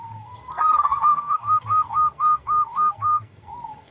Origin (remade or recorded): remade